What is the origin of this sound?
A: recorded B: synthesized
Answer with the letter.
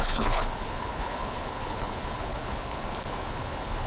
B